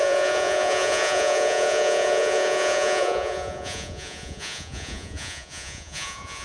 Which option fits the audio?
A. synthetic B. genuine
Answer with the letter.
A